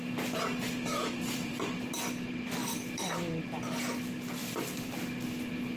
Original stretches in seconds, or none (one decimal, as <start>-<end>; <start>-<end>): 0.0-1.0; 1.9-4.4; 5.0-5.8